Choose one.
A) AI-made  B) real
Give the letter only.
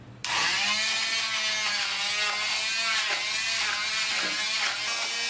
B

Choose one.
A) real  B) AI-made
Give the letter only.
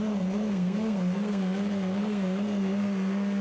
B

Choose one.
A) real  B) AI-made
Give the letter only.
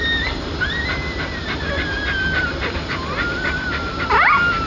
A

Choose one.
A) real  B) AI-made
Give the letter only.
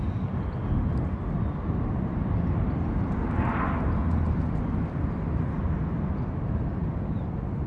A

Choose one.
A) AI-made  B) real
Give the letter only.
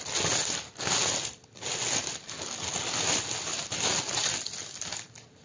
B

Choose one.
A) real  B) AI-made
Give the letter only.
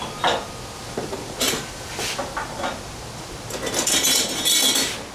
A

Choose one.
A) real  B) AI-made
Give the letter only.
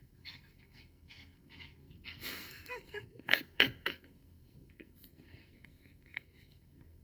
B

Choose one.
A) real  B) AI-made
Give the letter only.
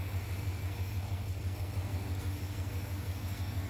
B